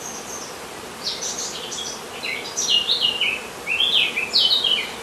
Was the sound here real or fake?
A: real